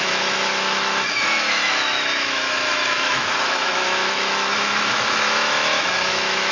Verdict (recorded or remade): remade